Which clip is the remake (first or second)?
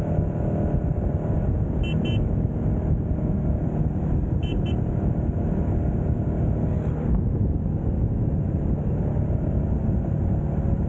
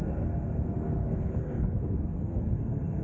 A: second